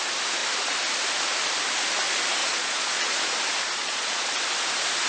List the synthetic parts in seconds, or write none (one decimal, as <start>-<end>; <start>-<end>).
2.4-3.3; 3.8-4.3